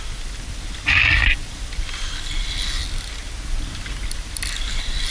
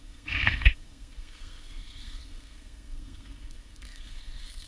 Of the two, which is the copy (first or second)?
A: second